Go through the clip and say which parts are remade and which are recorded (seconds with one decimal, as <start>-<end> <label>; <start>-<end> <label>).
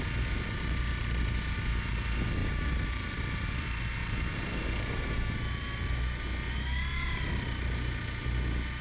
0.0-2.4 recorded; 2.4-3.6 remade; 3.6-4.0 recorded; 4.0-4.5 remade; 4.5-8.8 recorded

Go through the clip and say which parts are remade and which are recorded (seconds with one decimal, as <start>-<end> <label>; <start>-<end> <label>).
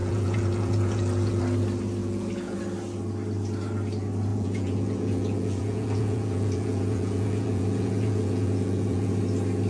0.0-1.4 remade; 1.4-2.0 recorded; 2.0-2.6 remade; 2.6-4.3 recorded; 4.3-9.1 remade; 9.1-9.7 recorded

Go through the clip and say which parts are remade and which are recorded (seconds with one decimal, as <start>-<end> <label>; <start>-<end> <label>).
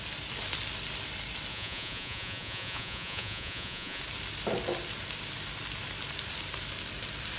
0.0-1.5 recorded; 1.5-4.0 remade; 4.0-7.4 recorded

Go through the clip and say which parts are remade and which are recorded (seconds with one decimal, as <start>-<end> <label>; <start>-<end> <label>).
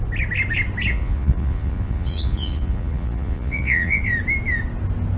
0.0-0.9 recorded; 0.9-4.0 remade; 4.0-5.2 recorded